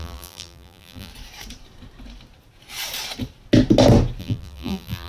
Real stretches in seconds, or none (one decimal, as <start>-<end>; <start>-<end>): 1.1-4.2